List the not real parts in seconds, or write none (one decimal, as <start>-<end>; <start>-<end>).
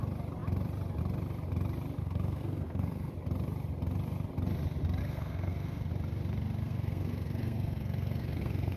2.0-3.1; 5.0-5.9; 6.6-8.8